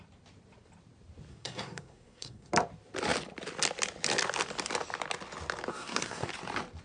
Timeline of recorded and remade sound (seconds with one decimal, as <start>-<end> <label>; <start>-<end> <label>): 0.0-1.3 recorded; 1.3-2.5 remade; 2.5-5.7 recorded; 5.7-6.3 remade; 6.3-6.8 recorded